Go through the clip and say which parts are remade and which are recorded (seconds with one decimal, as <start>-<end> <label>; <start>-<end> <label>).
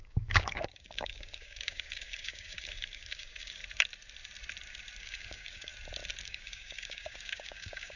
0.0-3.6 remade; 3.6-5.0 recorded; 5.0-5.7 remade; 5.7-6.2 recorded; 6.2-8.0 remade